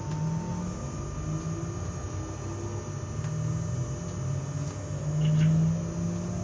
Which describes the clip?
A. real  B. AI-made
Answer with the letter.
A